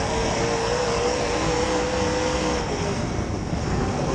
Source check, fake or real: fake